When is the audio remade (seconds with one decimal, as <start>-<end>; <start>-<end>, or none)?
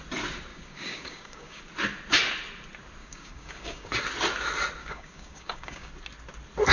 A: 0.5-1.6; 3.0-3.9; 4.8-5.9